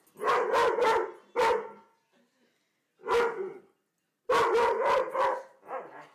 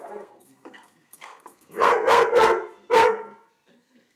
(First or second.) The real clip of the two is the first